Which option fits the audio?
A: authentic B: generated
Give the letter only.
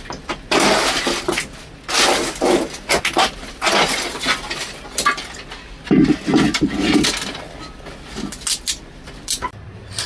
A